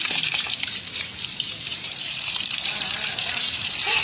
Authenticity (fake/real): fake